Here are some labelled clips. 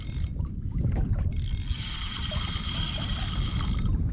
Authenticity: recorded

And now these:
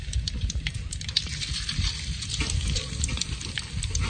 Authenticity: recorded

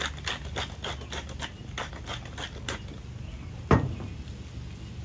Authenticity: recorded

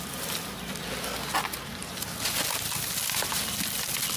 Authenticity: recorded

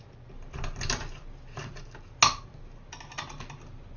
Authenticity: recorded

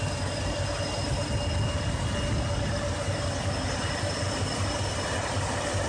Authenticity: recorded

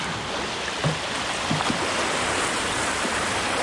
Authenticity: recorded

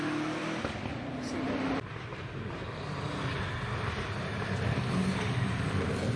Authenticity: recorded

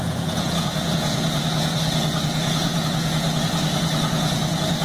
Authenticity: remade